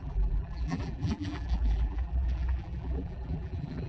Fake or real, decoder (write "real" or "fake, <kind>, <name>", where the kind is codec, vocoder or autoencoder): fake, vocoder, BigVGAN v2